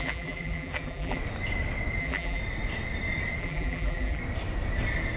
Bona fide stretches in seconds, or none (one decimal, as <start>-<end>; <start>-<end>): 1.2-2.0; 2.4-3.4; 4.2-5.2